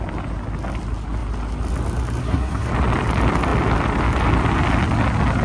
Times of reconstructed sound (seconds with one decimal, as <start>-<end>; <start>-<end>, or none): 2.2-2.7